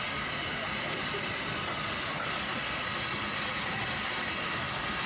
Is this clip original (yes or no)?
yes